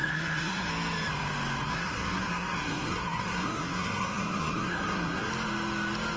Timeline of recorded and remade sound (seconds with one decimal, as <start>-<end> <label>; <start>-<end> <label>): 0.0-0.7 remade; 0.7-1.6 recorded; 1.6-5.3 remade; 5.3-6.2 recorded